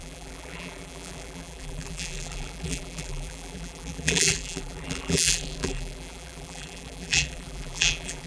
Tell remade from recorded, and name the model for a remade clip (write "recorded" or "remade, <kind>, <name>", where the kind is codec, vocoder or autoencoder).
remade, vocoder, BigVGAN v2